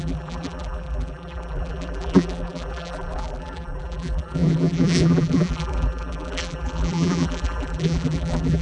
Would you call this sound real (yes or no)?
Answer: no